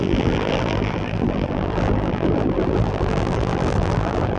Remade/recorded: remade